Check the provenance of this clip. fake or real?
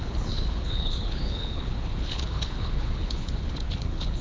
fake